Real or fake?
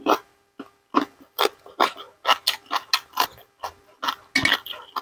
real